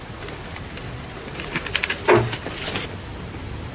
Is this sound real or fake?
real